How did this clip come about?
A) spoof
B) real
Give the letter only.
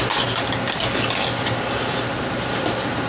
B